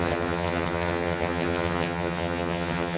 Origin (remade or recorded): remade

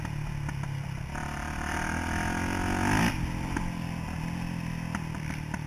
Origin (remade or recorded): recorded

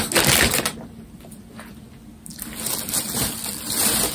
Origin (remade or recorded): recorded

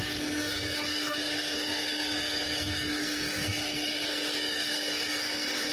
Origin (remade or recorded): remade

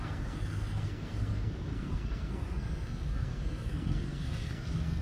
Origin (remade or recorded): remade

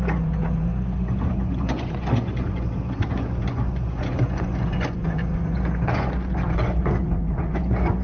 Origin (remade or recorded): remade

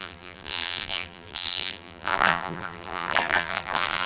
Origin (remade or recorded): remade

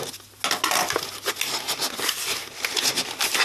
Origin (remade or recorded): recorded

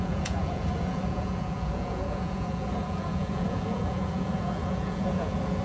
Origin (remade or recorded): remade